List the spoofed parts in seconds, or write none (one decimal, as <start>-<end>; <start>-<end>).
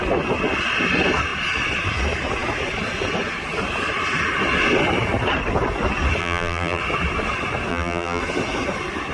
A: 6.2-6.8; 7.7-8.2